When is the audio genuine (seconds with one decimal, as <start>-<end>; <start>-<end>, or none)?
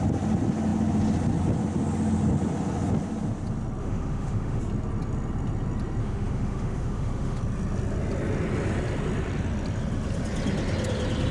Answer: 0.0-3.8; 4.6-6.0; 7.4-11.3